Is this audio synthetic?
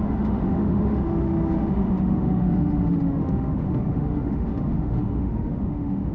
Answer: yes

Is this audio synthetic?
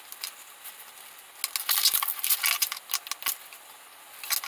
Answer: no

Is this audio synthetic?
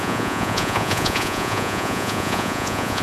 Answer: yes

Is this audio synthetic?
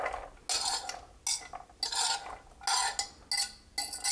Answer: no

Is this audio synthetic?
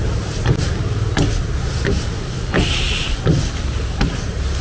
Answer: no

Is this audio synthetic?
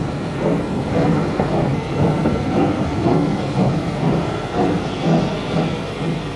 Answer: yes